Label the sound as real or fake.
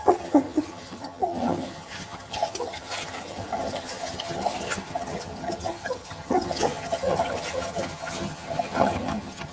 fake